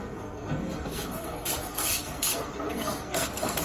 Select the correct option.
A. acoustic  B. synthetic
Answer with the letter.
B